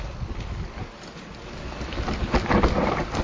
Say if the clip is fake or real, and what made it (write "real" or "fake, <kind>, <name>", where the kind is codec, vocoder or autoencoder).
real